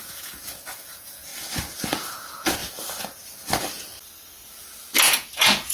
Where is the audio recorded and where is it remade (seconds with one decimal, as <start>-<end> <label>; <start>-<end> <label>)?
0.0-1.3 remade; 1.3-1.9 recorded; 1.9-2.6 remade; 2.6-5.0 recorded; 5.0-5.7 remade